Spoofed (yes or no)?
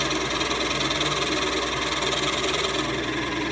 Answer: no